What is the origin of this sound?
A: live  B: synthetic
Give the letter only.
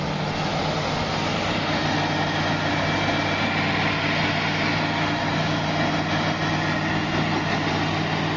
A